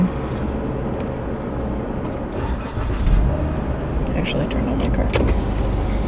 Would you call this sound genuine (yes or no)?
yes